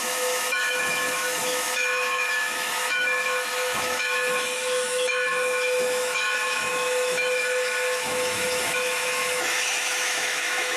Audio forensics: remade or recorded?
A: remade